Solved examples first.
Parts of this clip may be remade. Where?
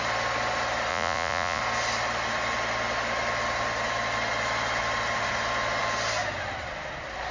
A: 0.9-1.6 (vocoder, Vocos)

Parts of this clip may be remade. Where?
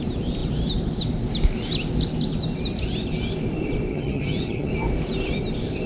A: 3.9-4.7 (vocoder, HiFi-GAN)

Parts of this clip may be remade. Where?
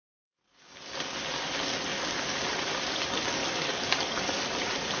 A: 1.9-2.7 (vocoder, BigVGAN v2); 3.4-5.0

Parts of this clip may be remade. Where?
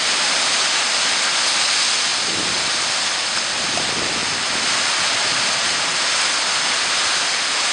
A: none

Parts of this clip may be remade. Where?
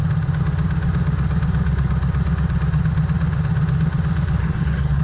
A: 4.4-5.0 (codec, SNAC)